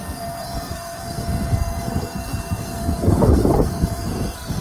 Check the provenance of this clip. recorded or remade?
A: remade